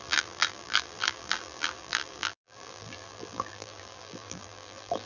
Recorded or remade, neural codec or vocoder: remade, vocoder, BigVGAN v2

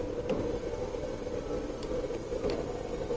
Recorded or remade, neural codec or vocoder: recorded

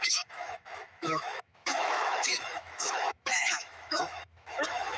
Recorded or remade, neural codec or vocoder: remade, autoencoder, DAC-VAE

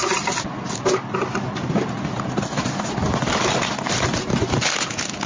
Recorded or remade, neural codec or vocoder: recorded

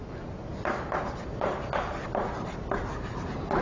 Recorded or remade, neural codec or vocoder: recorded